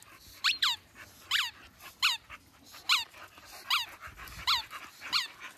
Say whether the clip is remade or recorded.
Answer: recorded